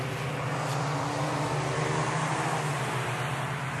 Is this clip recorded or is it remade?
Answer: remade